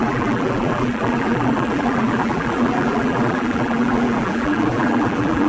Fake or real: fake